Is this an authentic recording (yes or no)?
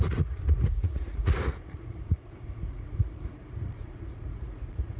no